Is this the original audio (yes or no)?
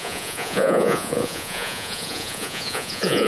no